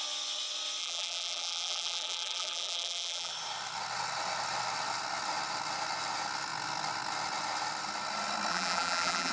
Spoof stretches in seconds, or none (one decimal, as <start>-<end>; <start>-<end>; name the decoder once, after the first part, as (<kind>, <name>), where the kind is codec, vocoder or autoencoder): 0.8-3.3 (vocoder, BigVGAN v2); 8.5-9.3